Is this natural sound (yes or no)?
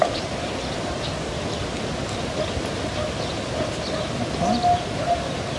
yes